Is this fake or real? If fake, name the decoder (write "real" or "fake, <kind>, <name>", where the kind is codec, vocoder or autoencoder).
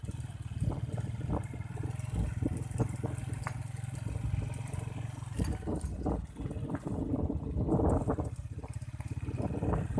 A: real